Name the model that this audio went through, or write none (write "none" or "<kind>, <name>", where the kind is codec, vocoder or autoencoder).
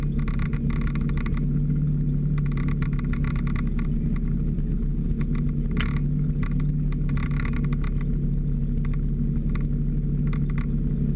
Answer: none